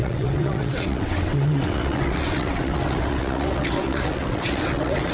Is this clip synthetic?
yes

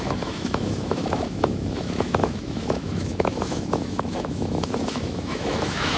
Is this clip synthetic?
yes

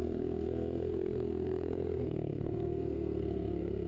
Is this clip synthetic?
yes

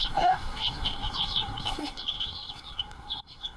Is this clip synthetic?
yes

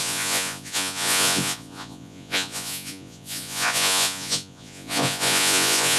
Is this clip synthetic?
yes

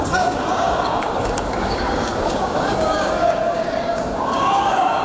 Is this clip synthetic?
yes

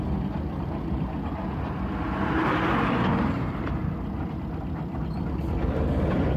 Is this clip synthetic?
no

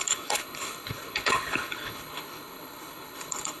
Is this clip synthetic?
yes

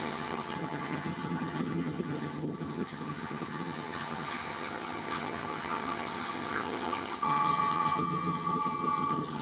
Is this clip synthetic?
yes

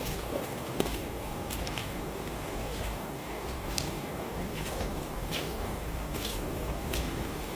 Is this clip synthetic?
yes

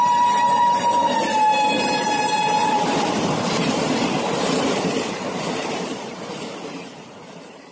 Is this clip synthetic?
yes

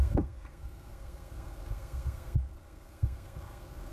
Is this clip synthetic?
yes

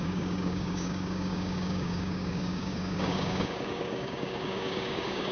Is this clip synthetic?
yes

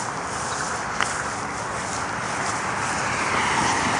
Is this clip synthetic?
no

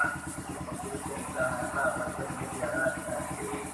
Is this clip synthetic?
yes